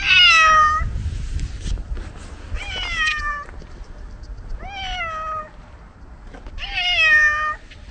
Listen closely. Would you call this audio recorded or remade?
recorded